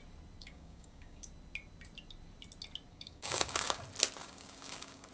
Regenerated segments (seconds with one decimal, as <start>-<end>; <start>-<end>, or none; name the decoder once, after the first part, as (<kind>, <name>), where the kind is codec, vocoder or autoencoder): 0.4-1.3 (codec, DAC); 2.9-3.8; 4.2-5.1